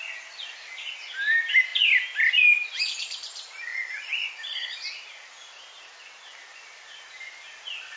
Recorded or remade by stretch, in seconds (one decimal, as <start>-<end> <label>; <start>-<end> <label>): 0.0-8.0 recorded